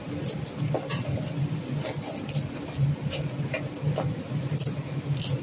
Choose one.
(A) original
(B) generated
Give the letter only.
A